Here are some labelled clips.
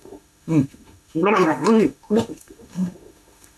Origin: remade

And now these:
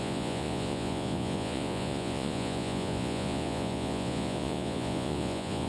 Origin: remade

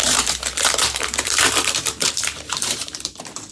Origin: remade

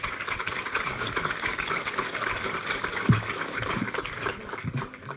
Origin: remade